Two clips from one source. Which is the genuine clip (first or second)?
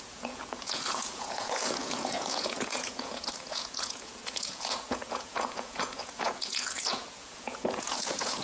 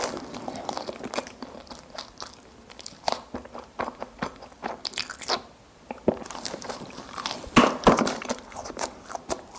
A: second